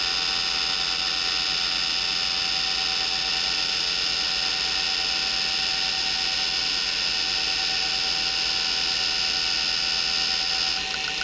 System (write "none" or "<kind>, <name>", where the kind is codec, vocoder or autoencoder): none